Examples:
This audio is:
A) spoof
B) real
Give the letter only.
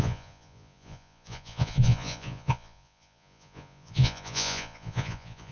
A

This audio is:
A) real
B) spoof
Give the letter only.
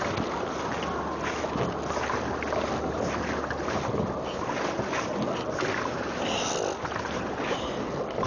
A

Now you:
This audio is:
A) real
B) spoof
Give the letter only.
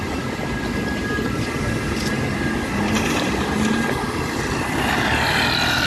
A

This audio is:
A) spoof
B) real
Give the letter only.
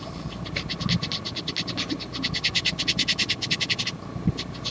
B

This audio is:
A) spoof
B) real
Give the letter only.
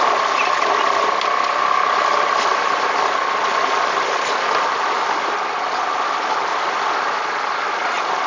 B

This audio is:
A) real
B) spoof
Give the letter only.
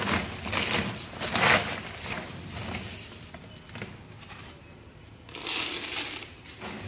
A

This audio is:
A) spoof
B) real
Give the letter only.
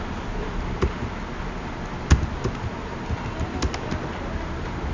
B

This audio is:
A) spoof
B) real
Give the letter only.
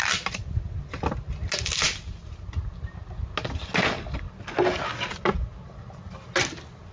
B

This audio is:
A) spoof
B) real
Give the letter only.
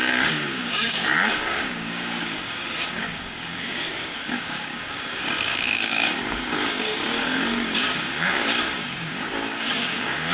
A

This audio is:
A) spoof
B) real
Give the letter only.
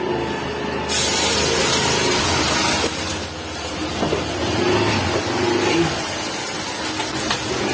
B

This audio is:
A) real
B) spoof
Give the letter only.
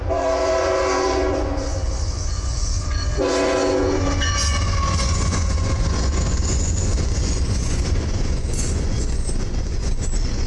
B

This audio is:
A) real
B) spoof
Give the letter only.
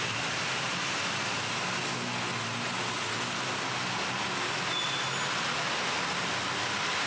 A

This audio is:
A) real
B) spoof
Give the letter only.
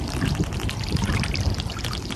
A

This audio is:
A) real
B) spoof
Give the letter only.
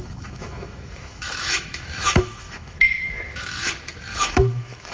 B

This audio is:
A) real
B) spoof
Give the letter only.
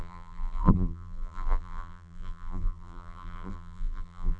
B